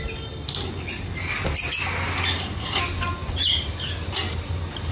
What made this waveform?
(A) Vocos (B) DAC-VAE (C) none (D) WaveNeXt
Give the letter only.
C